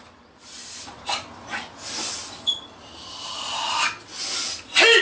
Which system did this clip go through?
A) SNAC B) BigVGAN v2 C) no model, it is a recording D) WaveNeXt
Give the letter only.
C